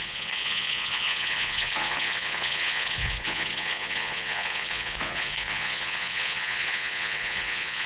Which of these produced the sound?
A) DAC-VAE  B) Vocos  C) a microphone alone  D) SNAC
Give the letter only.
B